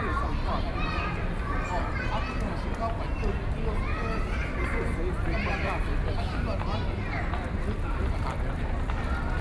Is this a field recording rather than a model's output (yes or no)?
yes